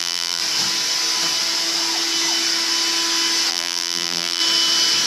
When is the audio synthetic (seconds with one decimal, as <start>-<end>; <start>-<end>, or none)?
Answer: 0.0-0.4; 3.5-4.4